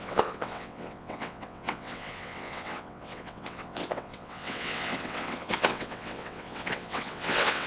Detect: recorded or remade remade